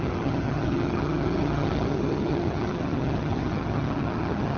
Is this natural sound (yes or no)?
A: no